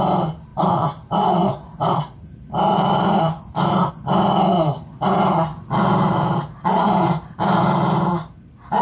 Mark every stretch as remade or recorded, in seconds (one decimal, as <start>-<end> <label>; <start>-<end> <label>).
0.0-0.5 recorded; 0.5-3.9 remade; 3.9-5.5 recorded; 5.5-8.8 remade